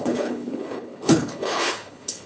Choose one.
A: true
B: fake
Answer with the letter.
B